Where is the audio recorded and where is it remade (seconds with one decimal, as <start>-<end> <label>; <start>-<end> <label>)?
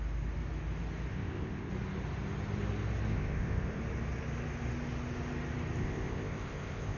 0.0-1.1 recorded; 1.1-1.7 remade; 1.7-3.1 recorded; 3.1-3.8 remade; 3.8-5.8 recorded; 5.8-7.0 remade